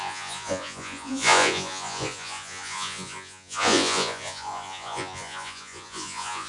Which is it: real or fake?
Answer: fake